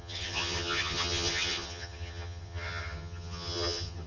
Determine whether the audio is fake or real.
fake